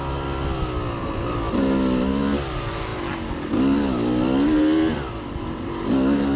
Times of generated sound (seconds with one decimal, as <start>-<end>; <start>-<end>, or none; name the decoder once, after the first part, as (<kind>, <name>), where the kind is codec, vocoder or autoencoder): none